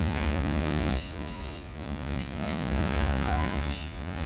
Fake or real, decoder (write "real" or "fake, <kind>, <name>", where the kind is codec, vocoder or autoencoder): fake, vocoder, Vocos